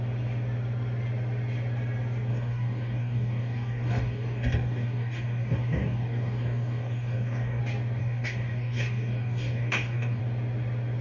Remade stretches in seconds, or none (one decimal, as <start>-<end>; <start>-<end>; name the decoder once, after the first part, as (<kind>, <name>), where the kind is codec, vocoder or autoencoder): 2.3-7.6 (codec, DAC); 8.0-10.2